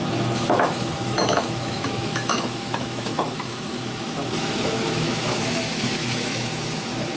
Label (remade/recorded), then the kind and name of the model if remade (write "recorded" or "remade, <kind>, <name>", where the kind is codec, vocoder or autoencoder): remade, autoencoder, DAC-VAE